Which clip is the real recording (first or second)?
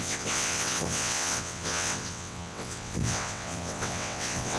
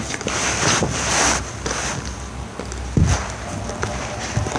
second